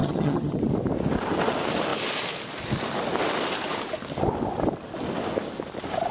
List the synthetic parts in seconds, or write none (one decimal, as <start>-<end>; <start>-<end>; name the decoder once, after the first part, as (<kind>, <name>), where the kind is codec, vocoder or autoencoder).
0.0-0.6 (vocoder, HiFi-GAN)